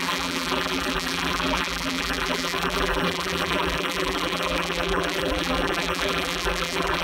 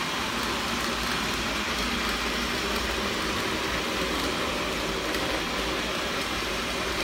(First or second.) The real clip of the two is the second